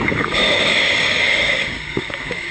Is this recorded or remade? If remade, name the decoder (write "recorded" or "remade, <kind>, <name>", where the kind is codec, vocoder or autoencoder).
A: remade, codec, DAC